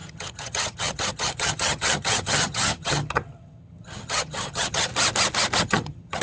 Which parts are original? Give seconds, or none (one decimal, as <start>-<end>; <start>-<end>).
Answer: 4.9-5.6